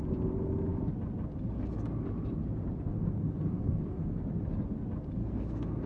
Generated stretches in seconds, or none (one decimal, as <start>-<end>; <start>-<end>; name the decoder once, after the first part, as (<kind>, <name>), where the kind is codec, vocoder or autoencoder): 2.9-4.2 (codec, SNAC); 5.2-5.9